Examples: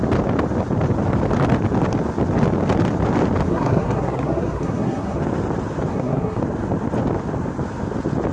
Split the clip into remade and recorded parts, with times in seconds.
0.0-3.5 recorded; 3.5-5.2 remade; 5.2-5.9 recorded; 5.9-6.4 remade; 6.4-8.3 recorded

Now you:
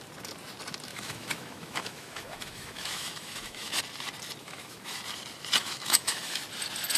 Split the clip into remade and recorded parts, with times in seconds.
0.0-0.9 recorded; 0.9-3.8 remade; 3.8-4.4 recorded; 4.4-5.0 remade; 5.0-5.6 recorded; 5.6-6.4 remade; 6.4-7.0 recorded

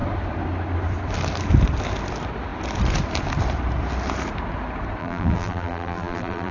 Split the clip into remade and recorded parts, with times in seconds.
0.0-5.0 recorded; 5.0-6.5 remade

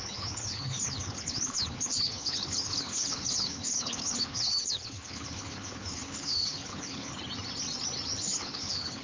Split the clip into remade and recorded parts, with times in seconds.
0.0-7.1 remade; 7.1-8.2 recorded; 8.2-9.0 remade

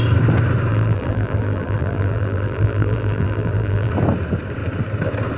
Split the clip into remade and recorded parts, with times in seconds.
0.0-0.7 recorded; 0.7-3.9 remade; 3.9-5.4 recorded

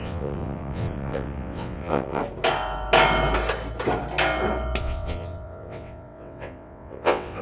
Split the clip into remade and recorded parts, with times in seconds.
0.0-2.2 remade; 2.2-4.8 recorded; 4.8-7.4 remade

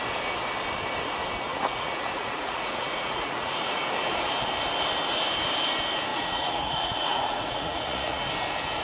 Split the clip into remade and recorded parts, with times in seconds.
0.0-1.5 recorded; 1.5-3.8 remade; 3.8-6.1 recorded; 6.1-8.3 remade; 8.3-8.8 recorded